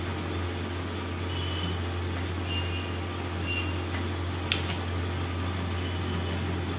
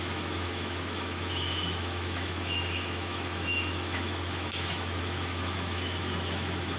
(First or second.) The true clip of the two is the first